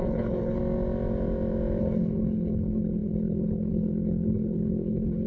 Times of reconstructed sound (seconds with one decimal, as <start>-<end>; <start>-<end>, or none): 0.0-0.6; 1.8-5.3